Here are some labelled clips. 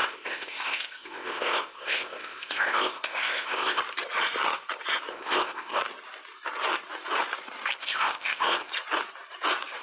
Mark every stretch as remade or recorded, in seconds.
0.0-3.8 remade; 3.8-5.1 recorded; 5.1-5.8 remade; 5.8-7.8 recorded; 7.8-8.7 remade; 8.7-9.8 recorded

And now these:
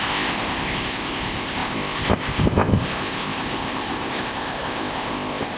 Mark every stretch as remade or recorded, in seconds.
0.0-5.6 remade

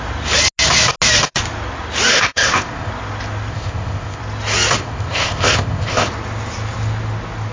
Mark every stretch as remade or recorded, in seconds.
0.0-2.1 recorded; 2.1-2.9 remade; 2.9-3.5 recorded; 3.5-4.2 remade; 4.2-4.8 recorded; 4.8-6.1 remade; 6.1-7.5 recorded

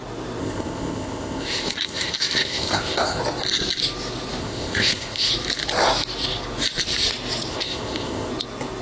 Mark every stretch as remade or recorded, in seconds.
0.0-0.4 recorded; 0.4-3.2 remade; 3.2-4.4 recorded; 4.4-5.3 remade; 5.3-7.5 recorded; 7.5-8.3 remade; 8.3-8.8 recorded

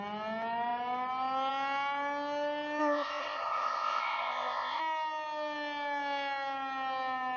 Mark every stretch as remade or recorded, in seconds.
0.0-2.8 recorded; 2.8-4.8 remade; 4.8-7.4 recorded

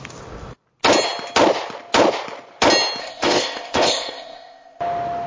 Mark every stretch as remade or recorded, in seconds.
0.0-3.0 recorded; 3.0-4.8 remade; 4.8-5.3 recorded

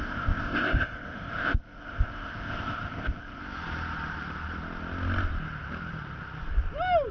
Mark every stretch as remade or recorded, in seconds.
0.0-3.4 remade; 3.4-7.1 recorded